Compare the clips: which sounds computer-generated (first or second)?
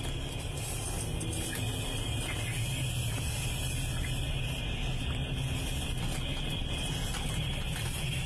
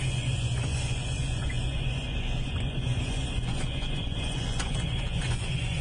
second